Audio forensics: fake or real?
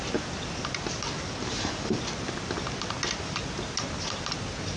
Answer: real